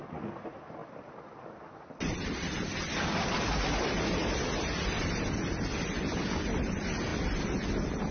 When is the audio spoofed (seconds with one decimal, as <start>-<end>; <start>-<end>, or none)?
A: none